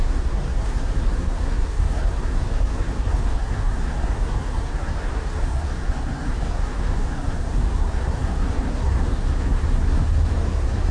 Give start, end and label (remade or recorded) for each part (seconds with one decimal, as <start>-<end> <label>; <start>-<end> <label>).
0.0-10.9 remade